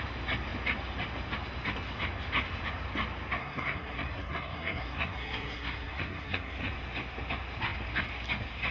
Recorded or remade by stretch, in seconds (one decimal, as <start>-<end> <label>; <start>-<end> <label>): 0.0-3.4 recorded; 3.4-6.7 remade; 6.7-8.7 recorded